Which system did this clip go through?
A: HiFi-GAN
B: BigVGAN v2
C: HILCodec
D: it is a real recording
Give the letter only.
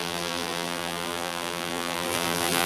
B